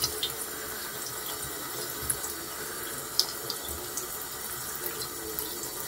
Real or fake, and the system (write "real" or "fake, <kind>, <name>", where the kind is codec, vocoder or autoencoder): real